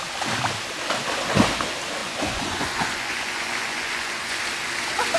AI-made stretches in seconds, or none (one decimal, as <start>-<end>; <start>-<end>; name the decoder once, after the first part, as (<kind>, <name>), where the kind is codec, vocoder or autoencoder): 2.0-4.4 (vocoder, Vocos)